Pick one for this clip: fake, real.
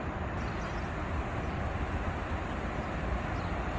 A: real